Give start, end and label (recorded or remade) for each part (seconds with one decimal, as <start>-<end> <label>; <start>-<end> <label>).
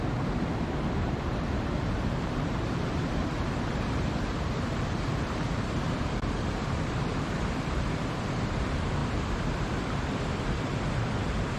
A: 0.0-9.0 remade; 9.0-10.0 recorded; 10.0-11.6 remade